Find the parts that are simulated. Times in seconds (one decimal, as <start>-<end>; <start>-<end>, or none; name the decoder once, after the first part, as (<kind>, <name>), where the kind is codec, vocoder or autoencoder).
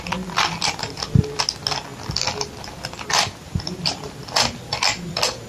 none